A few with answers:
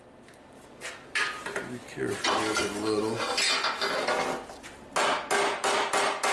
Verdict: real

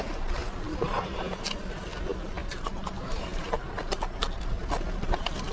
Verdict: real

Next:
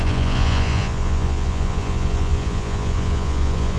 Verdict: fake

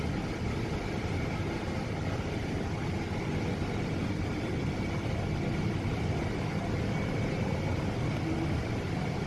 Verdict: real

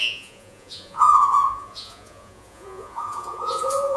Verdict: fake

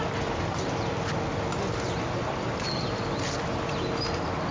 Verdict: real